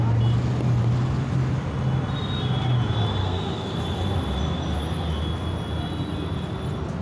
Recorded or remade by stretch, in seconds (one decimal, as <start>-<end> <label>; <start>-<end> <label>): 0.0-3.2 recorded; 3.2-3.7 remade; 3.7-7.0 recorded